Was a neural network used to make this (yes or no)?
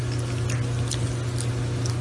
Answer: no